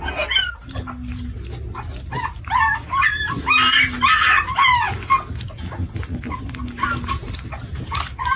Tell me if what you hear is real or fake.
real